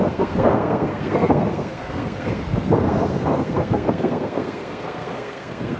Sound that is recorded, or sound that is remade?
remade